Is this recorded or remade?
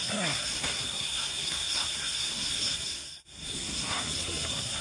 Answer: remade